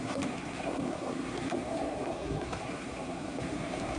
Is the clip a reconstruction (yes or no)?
yes